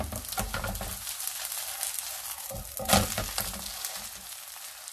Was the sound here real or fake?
real